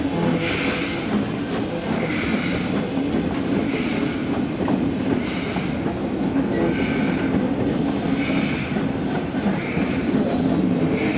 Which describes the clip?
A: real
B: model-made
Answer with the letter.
A